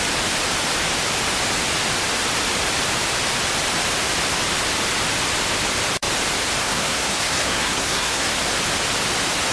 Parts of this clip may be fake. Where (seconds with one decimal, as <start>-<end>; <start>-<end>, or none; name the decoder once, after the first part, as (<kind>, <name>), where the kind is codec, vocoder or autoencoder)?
6.6-8.3 (codec, SNAC)